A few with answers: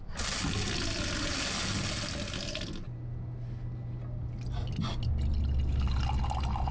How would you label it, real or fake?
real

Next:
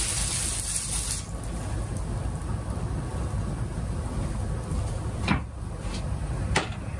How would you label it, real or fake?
real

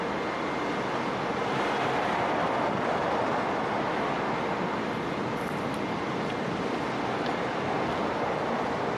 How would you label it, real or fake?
real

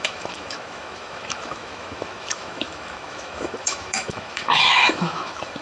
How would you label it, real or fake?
fake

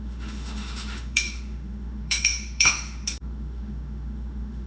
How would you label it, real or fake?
fake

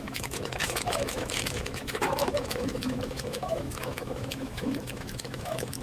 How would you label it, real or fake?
fake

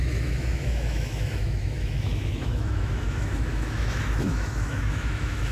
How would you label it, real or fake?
fake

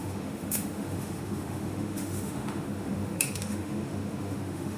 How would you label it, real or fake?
fake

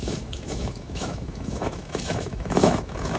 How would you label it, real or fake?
fake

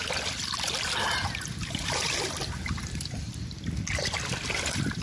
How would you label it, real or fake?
real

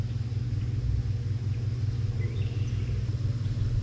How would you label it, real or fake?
real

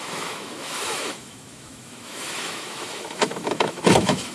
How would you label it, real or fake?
fake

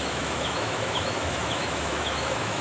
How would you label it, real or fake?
fake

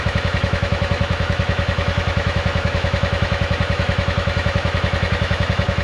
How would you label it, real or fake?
fake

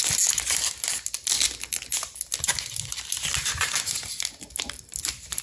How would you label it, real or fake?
real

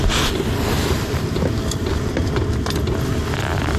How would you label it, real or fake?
real